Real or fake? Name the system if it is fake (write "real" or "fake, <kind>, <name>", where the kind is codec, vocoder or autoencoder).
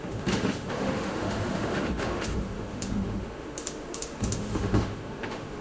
fake, autoencoder, DAC-VAE